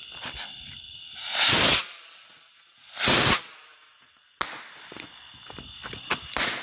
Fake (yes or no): no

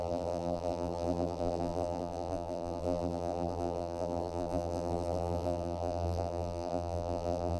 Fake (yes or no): yes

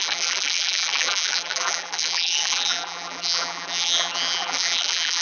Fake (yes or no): yes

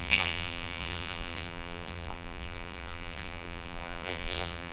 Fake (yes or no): yes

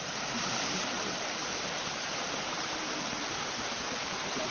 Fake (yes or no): yes